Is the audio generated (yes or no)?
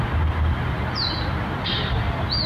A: no